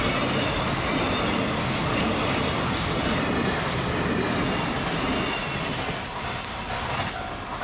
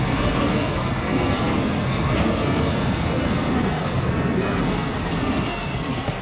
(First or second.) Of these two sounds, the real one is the first